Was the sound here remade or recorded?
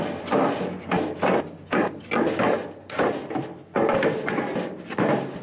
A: recorded